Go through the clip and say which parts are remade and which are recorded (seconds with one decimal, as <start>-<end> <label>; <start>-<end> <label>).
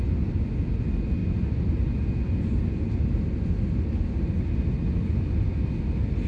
0.0-6.3 recorded